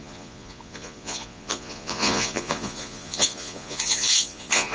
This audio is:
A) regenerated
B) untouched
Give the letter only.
A